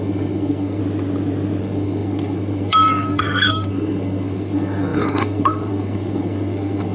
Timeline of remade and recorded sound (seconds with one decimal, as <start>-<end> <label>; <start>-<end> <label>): 0.0-0.8 remade; 0.8-1.6 recorded; 1.6-6.9 remade